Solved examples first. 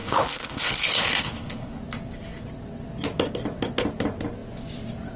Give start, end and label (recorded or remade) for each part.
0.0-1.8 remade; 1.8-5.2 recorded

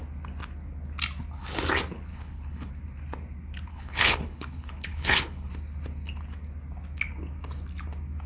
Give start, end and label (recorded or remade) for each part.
0.0-2.1 recorded; 2.1-2.7 remade; 2.7-3.7 recorded; 3.7-5.5 remade; 5.5-8.3 recorded

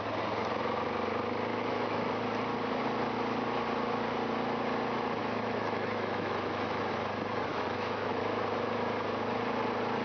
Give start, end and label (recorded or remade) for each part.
0.0-1.5 recorded; 1.5-2.1 remade; 2.1-5.2 recorded; 5.2-6.8 remade; 6.8-7.5 recorded; 7.5-8.2 remade; 8.2-10.0 recorded

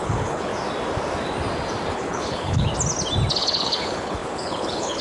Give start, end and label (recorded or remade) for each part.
0.0-0.5 remade; 0.5-1.9 recorded; 1.9-2.7 remade; 2.7-3.3 recorded; 3.3-5.0 remade

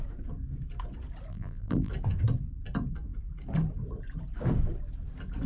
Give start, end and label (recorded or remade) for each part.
0.0-1.3 recorded; 1.3-1.9 remade; 1.9-5.5 recorded

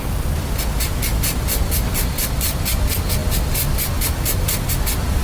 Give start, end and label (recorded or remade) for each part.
0.0-5.2 recorded